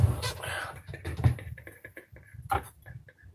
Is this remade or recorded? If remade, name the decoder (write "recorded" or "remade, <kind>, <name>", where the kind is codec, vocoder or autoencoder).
recorded